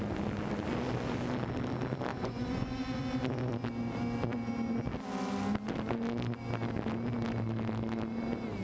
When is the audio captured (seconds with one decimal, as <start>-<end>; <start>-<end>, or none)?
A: 0.0-2.1; 3.0-8.6